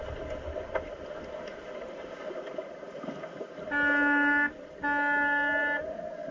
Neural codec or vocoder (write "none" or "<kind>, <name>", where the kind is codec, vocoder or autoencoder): none